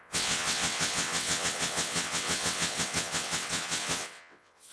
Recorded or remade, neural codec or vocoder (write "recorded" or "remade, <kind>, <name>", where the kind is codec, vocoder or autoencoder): remade, vocoder, WaveNeXt